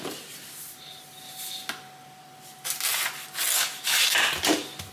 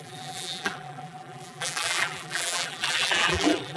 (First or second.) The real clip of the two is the first